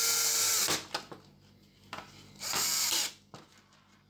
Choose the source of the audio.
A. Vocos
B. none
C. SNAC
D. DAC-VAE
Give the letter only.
B